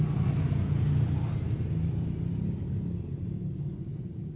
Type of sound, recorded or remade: recorded